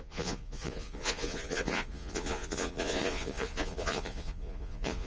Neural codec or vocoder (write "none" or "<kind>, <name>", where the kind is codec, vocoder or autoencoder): vocoder, Vocos